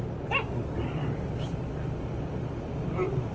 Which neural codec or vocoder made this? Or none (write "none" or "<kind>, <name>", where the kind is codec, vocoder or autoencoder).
none